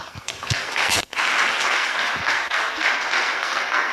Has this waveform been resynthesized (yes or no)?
yes